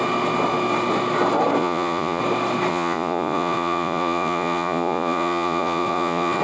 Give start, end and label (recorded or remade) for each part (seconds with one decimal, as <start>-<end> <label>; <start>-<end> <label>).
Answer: 0.0-1.6 recorded; 1.6-2.2 remade; 2.2-2.7 recorded; 2.7-6.4 remade